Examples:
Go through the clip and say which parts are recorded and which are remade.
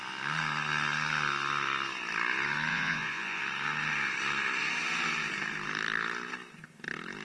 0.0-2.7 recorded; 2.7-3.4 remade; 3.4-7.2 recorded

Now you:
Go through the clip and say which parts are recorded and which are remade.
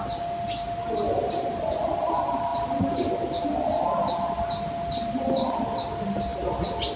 0.0-7.0 recorded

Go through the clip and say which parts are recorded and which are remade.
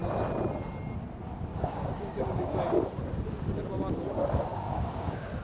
0.0-1.5 recorded; 1.5-2.6 remade; 2.6-4.5 recorded; 4.5-5.4 remade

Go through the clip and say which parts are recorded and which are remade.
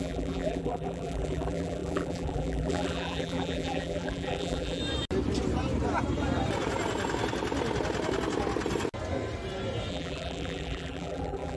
0.0-4.8 remade; 4.8-9.9 recorded; 9.9-11.6 remade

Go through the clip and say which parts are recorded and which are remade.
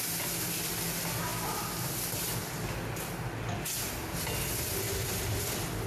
0.0-5.9 recorded